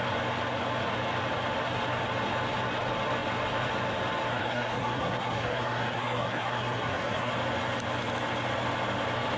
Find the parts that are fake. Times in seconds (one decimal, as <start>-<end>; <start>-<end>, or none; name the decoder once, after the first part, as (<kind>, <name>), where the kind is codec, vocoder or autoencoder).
4.3-7.3 (codec, SNAC)